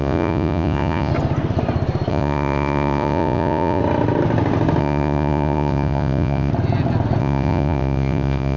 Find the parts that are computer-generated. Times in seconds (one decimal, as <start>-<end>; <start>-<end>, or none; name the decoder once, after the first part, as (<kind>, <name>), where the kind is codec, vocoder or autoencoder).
0.0-1.1 (vocoder, Vocos); 2.1-3.8; 4.8-6.5; 7.2-8.6

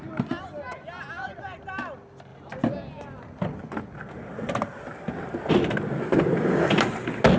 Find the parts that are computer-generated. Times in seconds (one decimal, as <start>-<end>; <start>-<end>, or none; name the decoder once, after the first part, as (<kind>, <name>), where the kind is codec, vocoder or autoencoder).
none

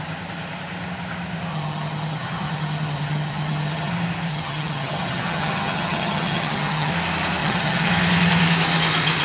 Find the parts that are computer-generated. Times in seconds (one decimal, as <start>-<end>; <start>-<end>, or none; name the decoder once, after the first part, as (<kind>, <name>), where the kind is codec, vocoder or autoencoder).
1.5-3.9 (vocoder, HiFi-GAN); 4.3-6.9; 7.4-7.9

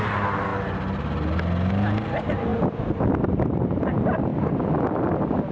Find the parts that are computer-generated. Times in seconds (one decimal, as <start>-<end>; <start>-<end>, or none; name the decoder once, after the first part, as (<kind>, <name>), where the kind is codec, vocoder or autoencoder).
0.0-0.5 (vocoder, BigVGAN v2); 1.7-2.5; 3.3-4.3

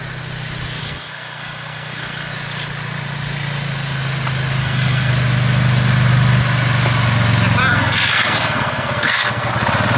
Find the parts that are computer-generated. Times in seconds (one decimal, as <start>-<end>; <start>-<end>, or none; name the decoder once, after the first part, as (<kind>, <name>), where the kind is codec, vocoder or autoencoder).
0.8-2.3 (codec, SNAC); 4.6-5.1; 7.6-9.5

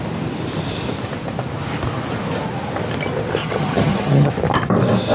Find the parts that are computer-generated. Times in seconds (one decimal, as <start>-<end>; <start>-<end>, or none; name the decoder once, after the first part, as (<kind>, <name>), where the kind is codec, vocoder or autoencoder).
3.4-4.3 (vocoder, HiFi-GAN)